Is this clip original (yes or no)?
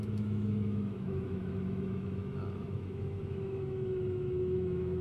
no